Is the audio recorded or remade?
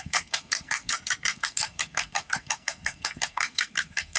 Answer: remade